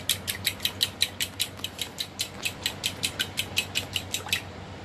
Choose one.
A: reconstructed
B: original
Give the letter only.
B